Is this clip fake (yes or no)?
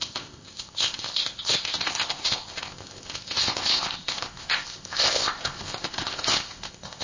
yes